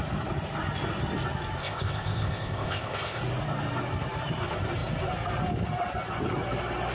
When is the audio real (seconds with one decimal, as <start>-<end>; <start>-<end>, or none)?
0.0-1.6; 3.2-6.9